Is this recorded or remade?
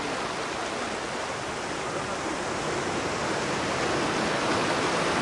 recorded